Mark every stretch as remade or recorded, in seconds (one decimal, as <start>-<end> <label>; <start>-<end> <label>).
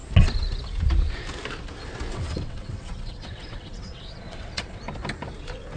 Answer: 0.0-2.1 recorded; 2.1-4.8 remade; 4.8-5.8 recorded